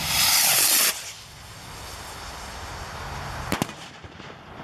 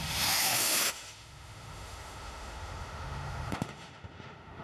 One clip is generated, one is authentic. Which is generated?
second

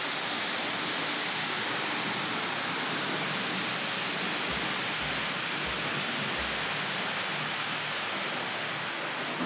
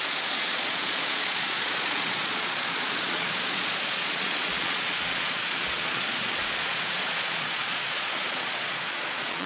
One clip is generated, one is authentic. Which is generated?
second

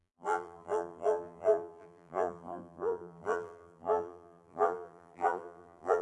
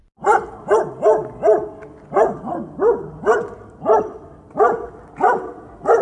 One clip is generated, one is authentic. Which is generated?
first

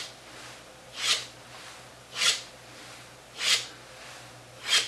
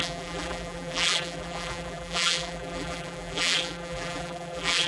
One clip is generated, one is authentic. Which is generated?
second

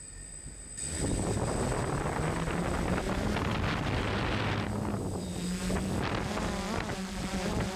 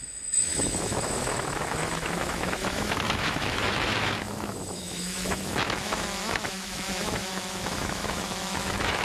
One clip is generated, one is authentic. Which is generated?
second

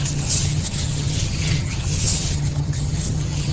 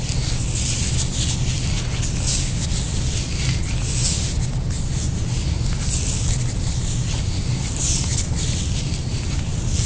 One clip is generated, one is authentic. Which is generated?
first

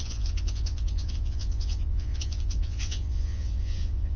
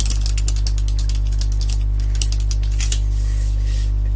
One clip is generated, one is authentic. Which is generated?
first